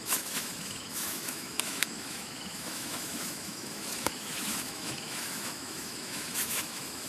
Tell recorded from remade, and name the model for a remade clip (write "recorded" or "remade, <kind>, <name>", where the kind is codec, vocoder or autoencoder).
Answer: remade, autoencoder, DAC-VAE